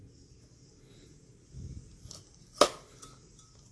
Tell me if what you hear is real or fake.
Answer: real